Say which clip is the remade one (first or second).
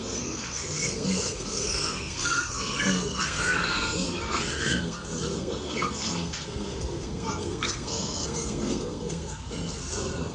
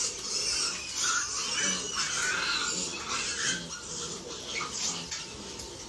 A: first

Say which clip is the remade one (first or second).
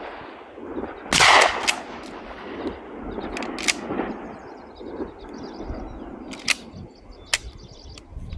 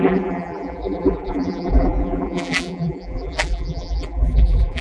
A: second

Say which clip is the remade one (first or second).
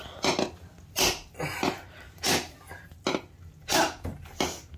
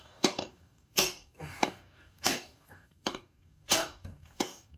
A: second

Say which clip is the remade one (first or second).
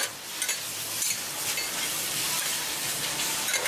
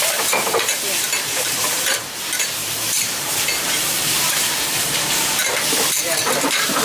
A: second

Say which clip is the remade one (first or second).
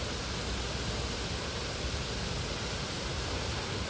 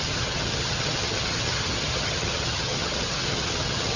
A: second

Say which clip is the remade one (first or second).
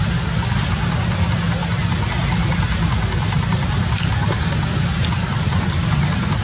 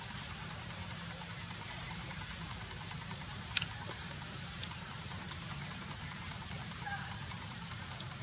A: second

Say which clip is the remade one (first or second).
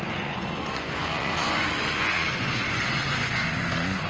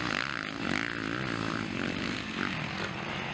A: first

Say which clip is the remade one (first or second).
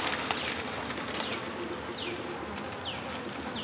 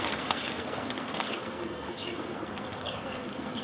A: second